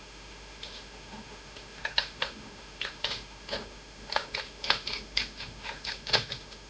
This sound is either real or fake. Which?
fake